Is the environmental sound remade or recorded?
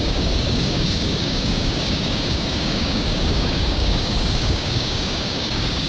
remade